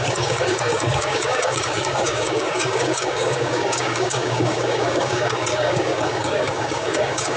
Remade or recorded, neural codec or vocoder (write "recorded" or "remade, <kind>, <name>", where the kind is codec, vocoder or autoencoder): remade, codec, DAC